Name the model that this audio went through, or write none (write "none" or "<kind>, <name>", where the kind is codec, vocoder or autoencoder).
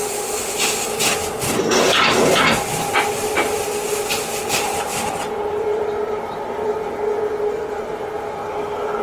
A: none